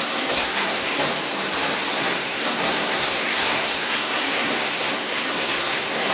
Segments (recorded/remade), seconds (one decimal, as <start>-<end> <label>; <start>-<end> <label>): 0.0-0.9 remade; 0.9-1.9 recorded; 1.9-6.1 remade